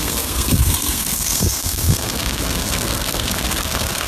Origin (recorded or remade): remade